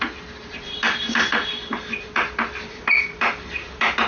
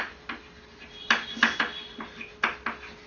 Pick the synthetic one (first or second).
first